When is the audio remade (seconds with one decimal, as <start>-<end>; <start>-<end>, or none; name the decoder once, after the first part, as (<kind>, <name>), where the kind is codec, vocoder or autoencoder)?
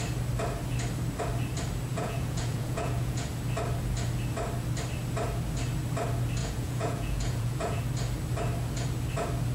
1.9-3.3 (vocoder, Vocos); 6.4-7.8